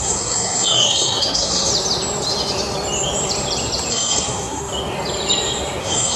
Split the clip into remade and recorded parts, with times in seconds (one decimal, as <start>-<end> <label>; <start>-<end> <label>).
0.0-1.7 remade; 1.7-3.9 recorded; 3.9-4.7 remade; 4.7-5.8 recorded; 5.8-6.2 remade